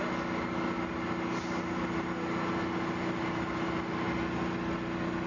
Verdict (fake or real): real